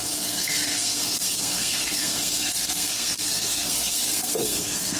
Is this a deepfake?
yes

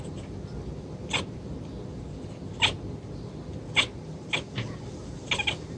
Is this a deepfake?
no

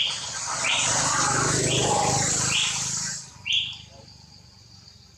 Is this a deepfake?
no